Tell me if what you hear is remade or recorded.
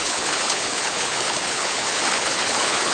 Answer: remade